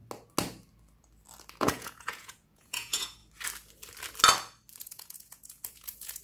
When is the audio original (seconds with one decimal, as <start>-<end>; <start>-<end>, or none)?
0.0-1.6; 3.2-4.8

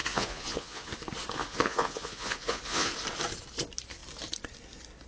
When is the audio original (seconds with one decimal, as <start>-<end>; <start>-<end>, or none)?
0.9-1.4; 2.9-5.1

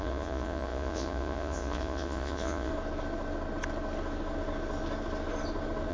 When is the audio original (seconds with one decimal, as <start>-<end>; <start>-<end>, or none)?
2.7-5.9

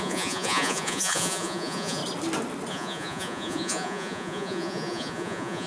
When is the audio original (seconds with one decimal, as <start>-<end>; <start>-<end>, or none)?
2.0-2.7

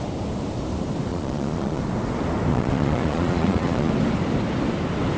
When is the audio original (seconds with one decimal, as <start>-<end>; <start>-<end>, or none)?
0.0-1.1; 1.8-2.5; 3.9-5.2